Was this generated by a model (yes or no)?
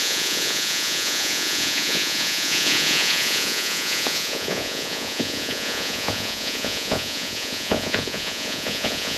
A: yes